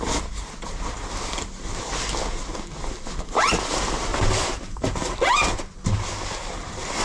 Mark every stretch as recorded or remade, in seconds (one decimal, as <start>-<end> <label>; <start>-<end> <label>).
0.0-4.1 recorded; 4.1-5.3 remade; 5.3-7.0 recorded